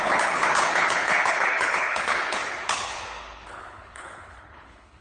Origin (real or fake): fake